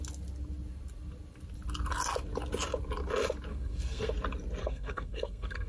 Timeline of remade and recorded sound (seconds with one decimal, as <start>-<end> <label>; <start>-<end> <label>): 0.0-3.5 recorded; 3.5-4.1 remade; 4.1-4.6 recorded; 4.6-5.7 remade